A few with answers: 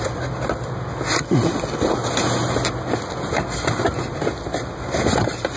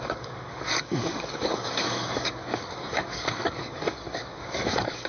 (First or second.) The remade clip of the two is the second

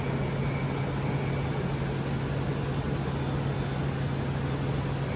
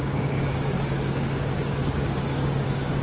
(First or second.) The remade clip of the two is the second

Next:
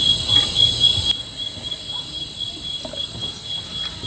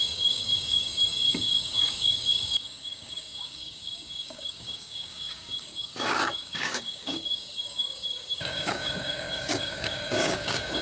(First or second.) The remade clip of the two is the second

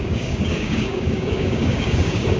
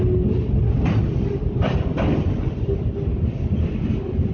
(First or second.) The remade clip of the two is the first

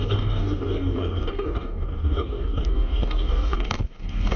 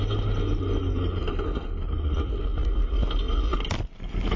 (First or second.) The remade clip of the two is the first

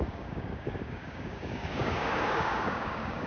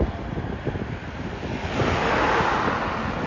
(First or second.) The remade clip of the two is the first